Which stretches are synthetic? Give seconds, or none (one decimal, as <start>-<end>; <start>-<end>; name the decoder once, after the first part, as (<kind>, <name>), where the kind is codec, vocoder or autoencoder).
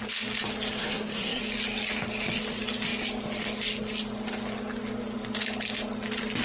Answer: 0.8-1.4 (codec, SNAC)